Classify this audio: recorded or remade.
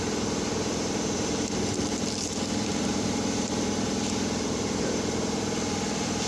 remade